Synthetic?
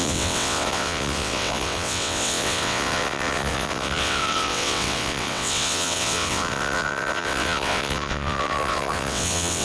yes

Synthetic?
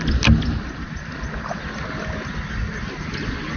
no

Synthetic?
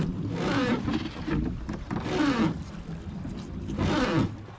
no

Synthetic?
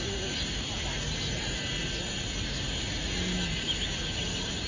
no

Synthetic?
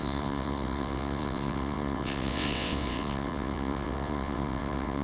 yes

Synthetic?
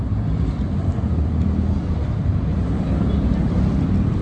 no